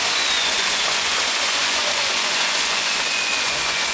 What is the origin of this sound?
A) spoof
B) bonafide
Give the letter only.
A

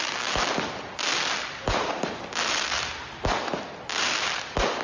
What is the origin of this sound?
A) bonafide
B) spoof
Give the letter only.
A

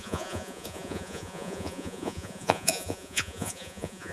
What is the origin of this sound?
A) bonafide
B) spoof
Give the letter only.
B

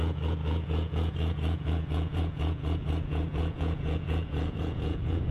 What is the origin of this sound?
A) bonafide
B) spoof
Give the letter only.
B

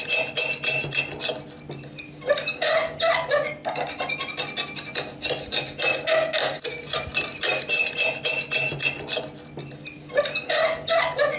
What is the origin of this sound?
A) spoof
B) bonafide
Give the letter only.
B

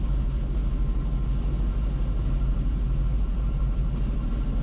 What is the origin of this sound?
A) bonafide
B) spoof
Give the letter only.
A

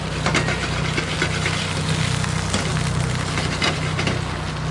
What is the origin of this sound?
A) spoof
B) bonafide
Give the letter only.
B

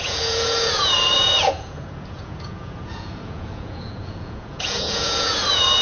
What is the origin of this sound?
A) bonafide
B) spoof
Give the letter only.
B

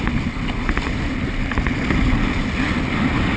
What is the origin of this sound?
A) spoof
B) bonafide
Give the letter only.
B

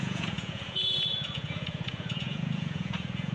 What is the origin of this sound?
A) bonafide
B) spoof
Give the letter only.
B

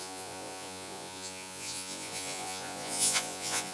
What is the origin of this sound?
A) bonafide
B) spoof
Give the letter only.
B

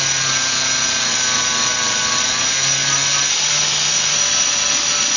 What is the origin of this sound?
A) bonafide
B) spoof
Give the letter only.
A